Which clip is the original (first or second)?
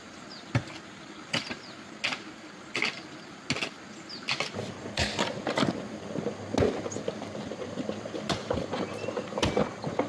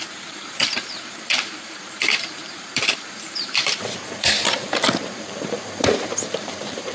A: first